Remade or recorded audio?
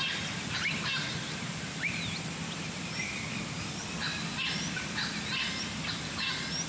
recorded